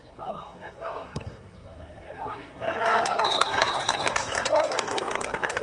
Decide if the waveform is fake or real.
fake